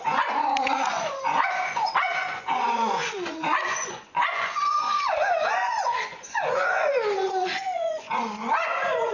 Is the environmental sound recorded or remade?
remade